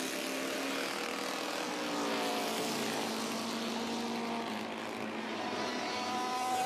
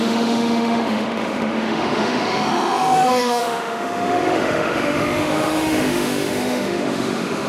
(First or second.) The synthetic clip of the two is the second